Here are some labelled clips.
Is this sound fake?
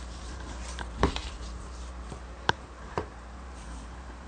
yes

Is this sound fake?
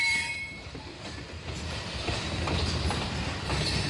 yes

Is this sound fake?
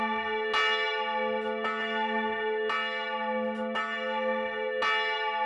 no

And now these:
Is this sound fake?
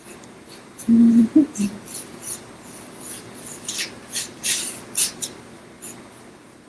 yes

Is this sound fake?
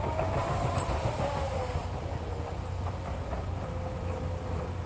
no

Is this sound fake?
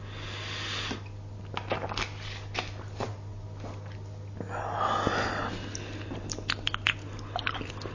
no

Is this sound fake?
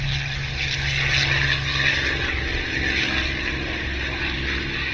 no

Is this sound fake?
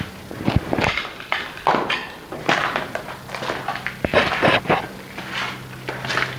no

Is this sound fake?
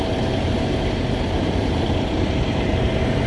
yes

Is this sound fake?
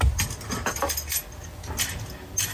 no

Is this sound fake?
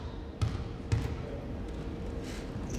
no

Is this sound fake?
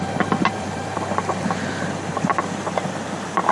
yes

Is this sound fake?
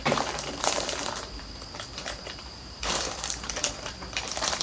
yes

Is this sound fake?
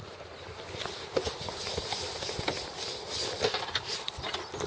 yes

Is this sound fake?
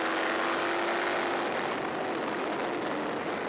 no